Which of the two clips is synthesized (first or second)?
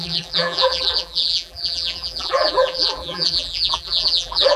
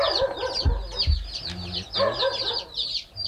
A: first